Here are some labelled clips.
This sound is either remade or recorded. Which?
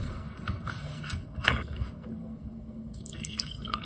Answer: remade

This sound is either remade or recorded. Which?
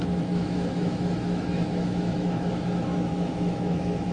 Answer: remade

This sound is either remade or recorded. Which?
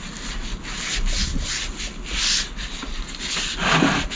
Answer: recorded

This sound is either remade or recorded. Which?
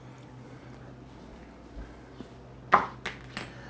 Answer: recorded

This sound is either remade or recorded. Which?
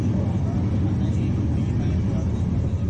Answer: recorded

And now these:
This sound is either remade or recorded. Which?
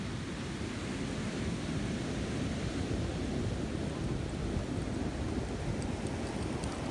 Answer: recorded